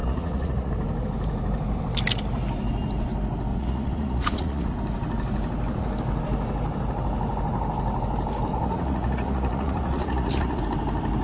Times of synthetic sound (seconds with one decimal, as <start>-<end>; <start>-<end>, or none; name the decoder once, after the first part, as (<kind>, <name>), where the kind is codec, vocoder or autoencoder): 0.0-0.7 (vocoder, Vocos); 3.5-4.7; 8.5-10.6